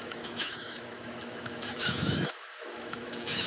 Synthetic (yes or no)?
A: yes